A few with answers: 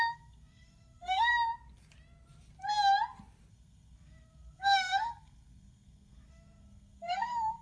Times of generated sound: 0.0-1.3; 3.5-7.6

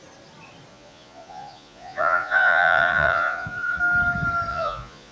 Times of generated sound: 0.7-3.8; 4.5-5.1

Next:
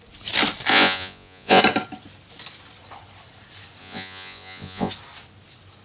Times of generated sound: 0.7-1.6; 3.8-4.9

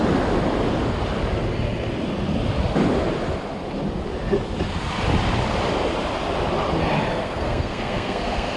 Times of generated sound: 7.1-8.6

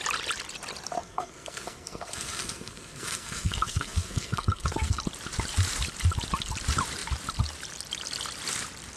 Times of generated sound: 1.0-5.0

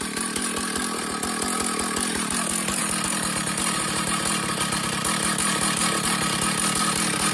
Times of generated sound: 0.0-0.8; 2.1-7.3

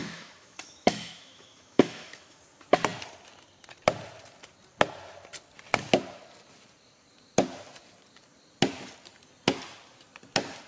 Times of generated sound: 0.0-2.4